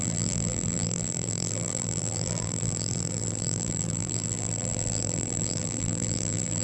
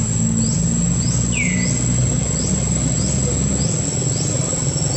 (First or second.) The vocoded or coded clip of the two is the first